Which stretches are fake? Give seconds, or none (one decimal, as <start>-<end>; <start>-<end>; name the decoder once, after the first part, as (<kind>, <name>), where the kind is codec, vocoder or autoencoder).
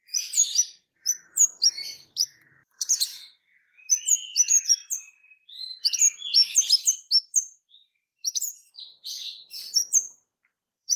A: 0.0-6.4 (vocoder, BigVGAN v2); 7.2-11.0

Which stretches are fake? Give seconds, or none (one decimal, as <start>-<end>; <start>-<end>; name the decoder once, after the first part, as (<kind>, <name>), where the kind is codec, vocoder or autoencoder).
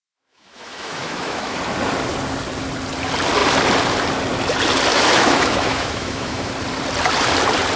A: 0.0-1.6 (autoencoder, DAC-VAE); 4.9-6.5